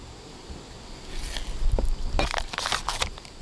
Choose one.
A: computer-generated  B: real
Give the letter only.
B